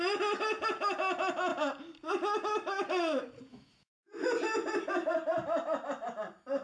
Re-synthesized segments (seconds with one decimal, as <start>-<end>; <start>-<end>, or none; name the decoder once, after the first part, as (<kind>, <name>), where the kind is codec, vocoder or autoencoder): 3.5-4.3 (autoencoder, DAC-VAE)